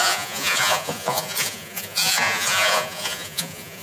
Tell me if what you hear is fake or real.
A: fake